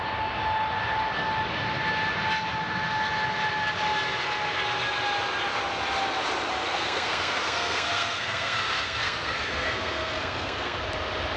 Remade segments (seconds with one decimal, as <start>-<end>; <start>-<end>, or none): 6.7-10.8